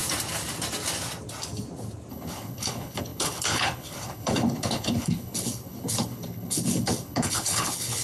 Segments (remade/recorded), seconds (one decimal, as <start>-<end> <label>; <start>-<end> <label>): 0.0-2.1 recorded; 2.1-8.0 remade